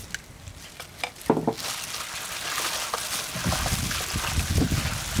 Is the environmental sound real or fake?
real